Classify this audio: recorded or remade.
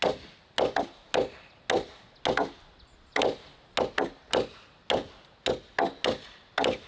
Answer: recorded